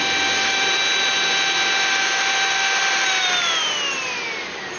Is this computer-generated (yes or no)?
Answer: no